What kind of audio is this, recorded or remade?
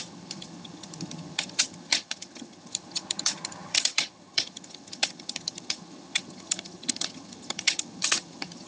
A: remade